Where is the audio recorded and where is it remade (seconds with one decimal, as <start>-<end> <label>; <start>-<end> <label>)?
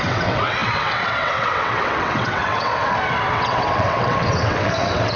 0.0-2.7 remade; 2.7-3.3 recorded; 3.3-5.2 remade